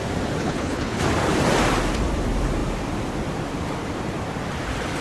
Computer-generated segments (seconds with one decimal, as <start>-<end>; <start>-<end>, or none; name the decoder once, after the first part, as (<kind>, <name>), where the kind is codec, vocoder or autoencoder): 0.4-1.0 (codec, HILCodec)